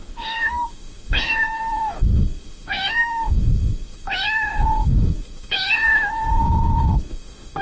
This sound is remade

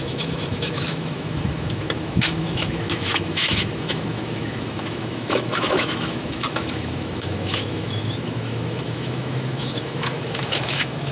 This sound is remade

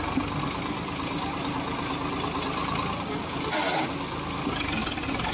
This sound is recorded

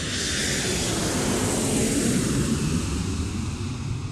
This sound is recorded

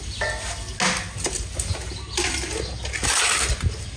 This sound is recorded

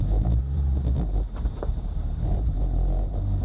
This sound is remade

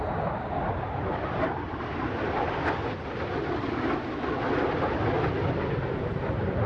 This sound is recorded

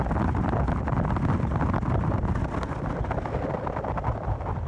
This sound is recorded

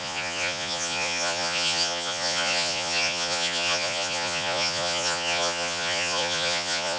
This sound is remade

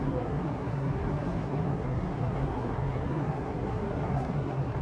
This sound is remade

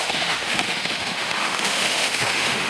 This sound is remade